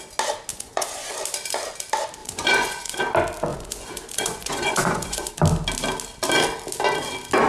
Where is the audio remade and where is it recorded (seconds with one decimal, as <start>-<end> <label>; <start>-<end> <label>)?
0.0-0.5 recorded; 0.5-1.1 remade; 1.1-2.2 recorded; 2.2-3.0 remade; 3.0-3.5 recorded; 3.5-5.3 remade; 5.3-7.5 recorded